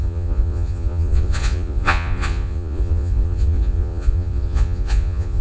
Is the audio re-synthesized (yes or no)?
yes